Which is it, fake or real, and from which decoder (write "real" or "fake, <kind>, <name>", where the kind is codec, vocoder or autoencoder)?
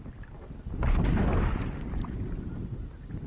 real